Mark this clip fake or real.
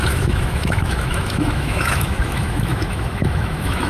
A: fake